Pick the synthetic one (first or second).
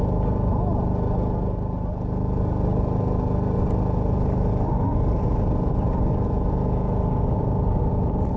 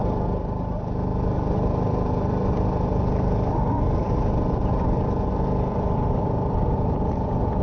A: second